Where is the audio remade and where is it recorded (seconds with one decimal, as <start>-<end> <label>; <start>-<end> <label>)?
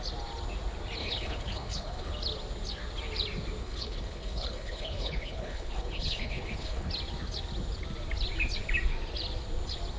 0.0-1.0 recorded; 1.0-2.1 remade; 2.1-3.6 recorded; 3.6-6.9 remade; 6.9-10.0 recorded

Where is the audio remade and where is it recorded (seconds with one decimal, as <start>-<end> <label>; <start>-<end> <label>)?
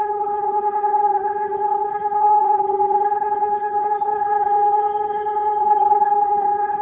0.0-6.8 remade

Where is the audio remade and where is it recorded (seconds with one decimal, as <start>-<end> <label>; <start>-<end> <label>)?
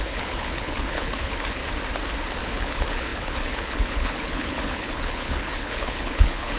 0.0-1.6 remade; 1.6-2.4 recorded; 2.4-6.6 remade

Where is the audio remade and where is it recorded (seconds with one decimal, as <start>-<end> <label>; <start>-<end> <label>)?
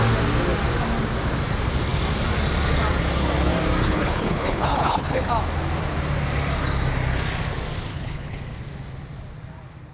0.0-3.8 recorded; 3.8-5.3 remade; 5.3-7.9 recorded; 7.9-8.4 remade; 8.4-9.9 recorded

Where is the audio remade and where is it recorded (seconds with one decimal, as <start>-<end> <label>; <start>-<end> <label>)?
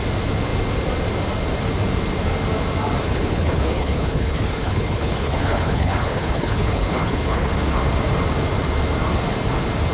0.0-3.0 recorded; 3.0-7.5 remade; 7.5-9.9 recorded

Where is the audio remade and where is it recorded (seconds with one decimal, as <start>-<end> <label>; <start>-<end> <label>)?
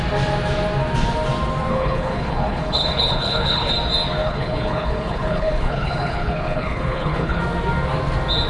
0.0-1.7 recorded; 1.7-3.7 remade; 3.7-4.2 recorded; 4.2-7.4 remade; 7.4-8.5 recorded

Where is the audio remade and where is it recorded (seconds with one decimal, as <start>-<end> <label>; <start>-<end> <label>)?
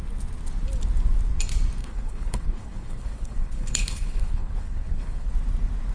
0.0-1.8 recorded; 1.8-5.3 remade; 5.3-5.9 recorded